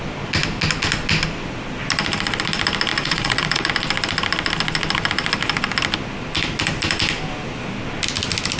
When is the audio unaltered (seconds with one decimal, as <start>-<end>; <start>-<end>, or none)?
0.0-2.9; 3.7-8.6